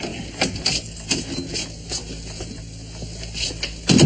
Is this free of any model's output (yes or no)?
yes